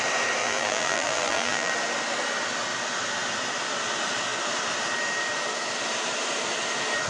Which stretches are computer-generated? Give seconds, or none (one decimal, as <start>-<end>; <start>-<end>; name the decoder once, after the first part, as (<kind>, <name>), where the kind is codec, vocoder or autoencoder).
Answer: 0.4-1.7 (vocoder, BigVGAN v2)

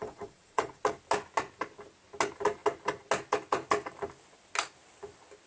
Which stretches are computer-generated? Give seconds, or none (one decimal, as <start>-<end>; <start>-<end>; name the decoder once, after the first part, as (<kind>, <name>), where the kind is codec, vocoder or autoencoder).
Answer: 0.0-0.8 (vocoder, Vocos)

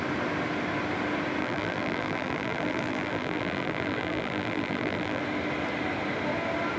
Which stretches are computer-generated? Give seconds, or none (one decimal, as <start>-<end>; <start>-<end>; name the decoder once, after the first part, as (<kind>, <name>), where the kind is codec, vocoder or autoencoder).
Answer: 1.4-5.2 (vocoder, BigVGAN v2)